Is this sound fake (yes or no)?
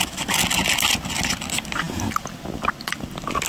no